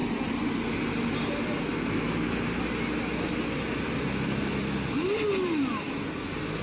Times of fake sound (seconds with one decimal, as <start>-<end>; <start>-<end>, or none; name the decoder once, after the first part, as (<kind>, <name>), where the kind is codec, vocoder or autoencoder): none